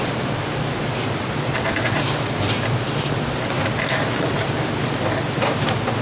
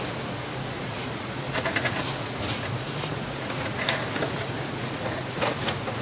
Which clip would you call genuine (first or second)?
first